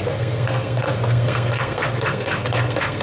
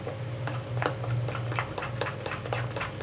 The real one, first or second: second